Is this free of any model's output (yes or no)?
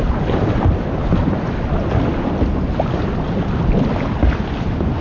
yes